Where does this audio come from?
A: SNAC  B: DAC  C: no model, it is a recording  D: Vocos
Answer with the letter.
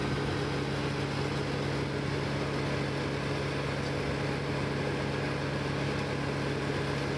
C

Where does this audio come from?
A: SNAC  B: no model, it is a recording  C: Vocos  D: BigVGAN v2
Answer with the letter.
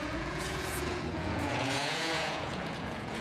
C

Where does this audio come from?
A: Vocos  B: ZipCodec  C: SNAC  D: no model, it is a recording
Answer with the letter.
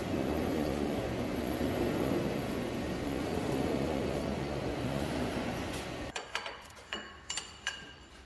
A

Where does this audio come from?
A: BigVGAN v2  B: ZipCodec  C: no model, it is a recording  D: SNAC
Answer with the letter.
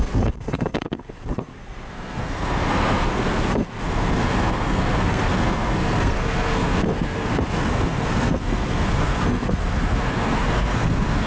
D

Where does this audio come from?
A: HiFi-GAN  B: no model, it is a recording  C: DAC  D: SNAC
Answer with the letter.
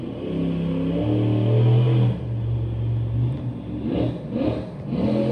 B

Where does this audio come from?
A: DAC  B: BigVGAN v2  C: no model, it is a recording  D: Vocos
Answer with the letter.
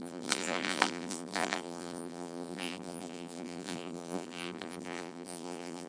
B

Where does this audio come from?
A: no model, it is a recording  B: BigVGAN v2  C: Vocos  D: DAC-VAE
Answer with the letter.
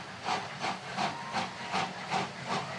A